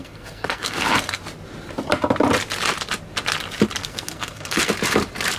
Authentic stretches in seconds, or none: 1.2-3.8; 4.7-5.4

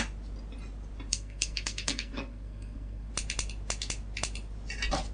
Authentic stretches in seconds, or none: 0.0-1.1; 3.1-5.1

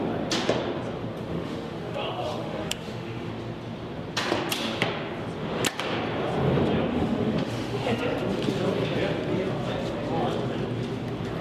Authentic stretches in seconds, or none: 0.0-1.3; 3.3-6.9; 8.0-11.4

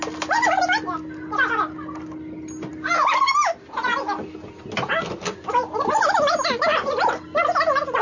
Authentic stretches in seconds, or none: 0.0-8.0